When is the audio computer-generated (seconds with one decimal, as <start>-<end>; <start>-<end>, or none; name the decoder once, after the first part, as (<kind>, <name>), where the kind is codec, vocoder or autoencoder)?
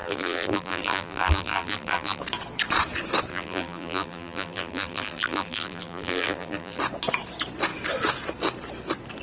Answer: 0.0-2.2 (vocoder, BigVGAN v2); 3.3-6.8